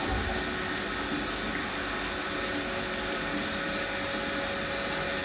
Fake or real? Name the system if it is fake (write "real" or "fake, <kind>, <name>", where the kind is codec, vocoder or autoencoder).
real